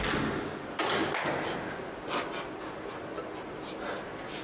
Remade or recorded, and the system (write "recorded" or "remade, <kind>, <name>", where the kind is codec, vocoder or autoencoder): recorded